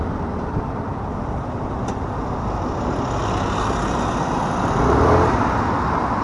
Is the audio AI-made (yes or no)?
no